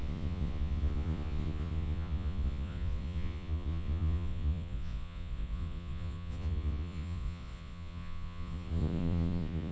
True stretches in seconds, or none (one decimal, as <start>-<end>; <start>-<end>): none